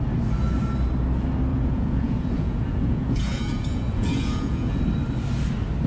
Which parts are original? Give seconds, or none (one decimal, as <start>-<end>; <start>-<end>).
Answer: 0.0-1.5; 4.8-5.9